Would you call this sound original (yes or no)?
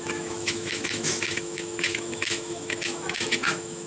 no